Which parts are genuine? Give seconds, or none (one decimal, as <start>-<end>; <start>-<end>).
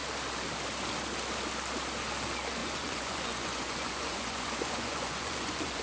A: 0.0-2.6